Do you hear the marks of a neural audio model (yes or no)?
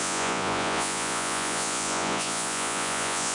yes